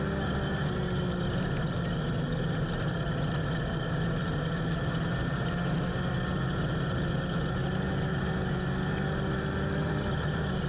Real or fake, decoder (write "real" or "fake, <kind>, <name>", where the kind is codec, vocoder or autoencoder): real